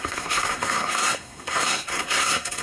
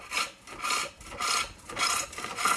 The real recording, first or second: second